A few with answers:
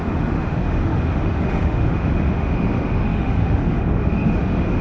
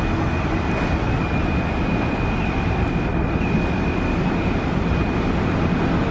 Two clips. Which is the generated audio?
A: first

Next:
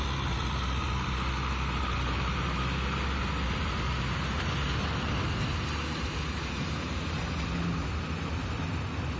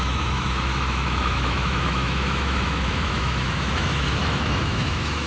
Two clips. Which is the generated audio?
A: second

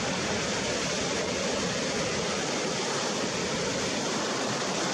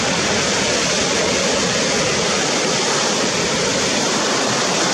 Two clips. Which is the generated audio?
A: first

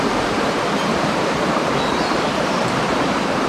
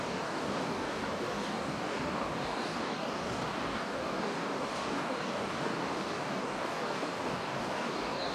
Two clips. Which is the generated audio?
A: second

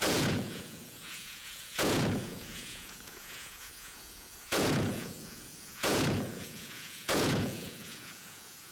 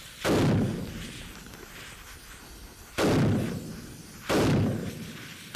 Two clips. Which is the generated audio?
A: first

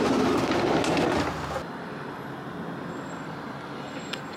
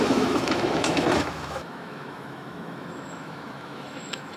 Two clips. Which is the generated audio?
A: second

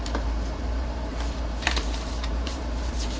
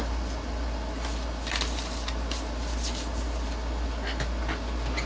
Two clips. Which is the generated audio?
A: first